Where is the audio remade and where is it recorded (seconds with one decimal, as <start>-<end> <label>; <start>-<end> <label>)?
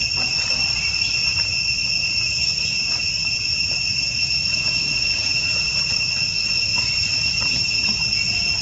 0.0-1.8 recorded; 1.8-5.8 remade; 5.8-6.7 recorded; 6.7-8.0 remade; 8.0-8.6 recorded